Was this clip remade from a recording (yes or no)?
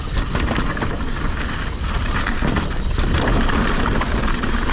no